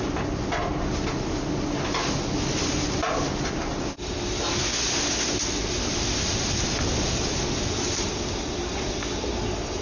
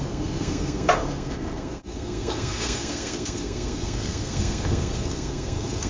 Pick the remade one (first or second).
second